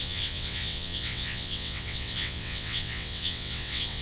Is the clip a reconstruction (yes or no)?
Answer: yes